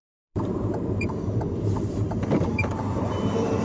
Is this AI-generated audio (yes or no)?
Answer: yes